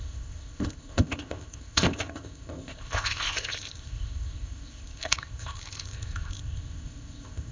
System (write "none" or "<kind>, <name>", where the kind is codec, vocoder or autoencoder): codec, ZipCodec